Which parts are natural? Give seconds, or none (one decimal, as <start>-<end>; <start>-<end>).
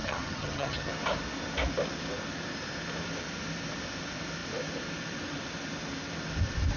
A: 0.9-6.8